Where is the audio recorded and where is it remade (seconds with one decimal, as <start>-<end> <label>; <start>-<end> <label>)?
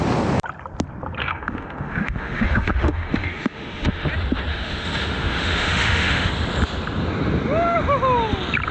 0.0-1.2 recorded; 1.2-4.1 remade; 4.1-4.5 recorded; 4.5-6.3 remade; 6.3-8.7 recorded